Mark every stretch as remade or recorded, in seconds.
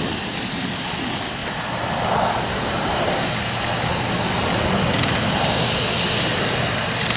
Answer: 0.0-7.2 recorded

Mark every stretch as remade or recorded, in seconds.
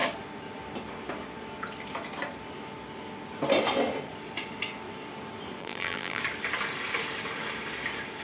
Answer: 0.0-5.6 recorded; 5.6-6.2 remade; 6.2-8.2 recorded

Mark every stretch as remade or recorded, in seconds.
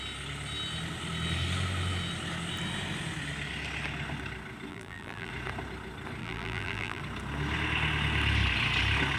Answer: 0.0-4.7 recorded; 4.7-5.3 remade; 5.3-6.2 recorded; 6.2-7.0 remade; 7.0-9.2 recorded